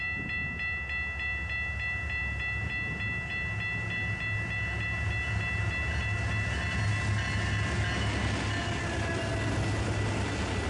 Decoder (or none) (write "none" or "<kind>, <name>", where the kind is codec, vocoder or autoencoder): none